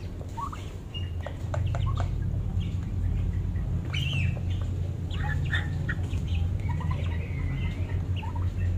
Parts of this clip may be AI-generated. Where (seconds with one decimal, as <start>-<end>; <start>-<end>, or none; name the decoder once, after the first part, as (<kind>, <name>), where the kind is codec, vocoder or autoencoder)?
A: none